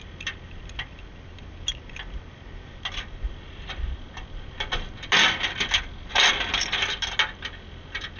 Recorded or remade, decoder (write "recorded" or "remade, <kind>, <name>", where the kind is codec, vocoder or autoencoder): recorded